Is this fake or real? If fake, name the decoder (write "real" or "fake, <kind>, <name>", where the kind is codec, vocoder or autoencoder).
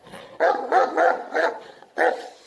fake, vocoder, Vocos